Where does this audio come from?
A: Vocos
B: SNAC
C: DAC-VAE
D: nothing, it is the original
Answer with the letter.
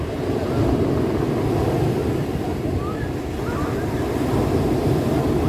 D